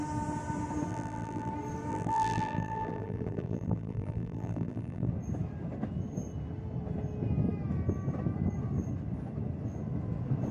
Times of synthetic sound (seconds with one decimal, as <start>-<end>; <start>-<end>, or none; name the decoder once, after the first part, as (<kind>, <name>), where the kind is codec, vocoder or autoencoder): 0.9-1.5 (vocoder, BigVGAN v2); 1.9-5.1